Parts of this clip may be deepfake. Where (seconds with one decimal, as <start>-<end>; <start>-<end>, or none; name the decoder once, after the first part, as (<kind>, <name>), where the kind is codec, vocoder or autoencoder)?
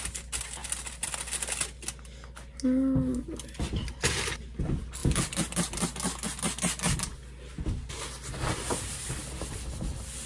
none